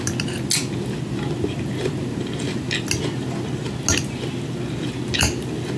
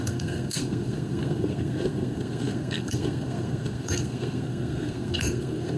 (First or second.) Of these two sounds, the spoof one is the second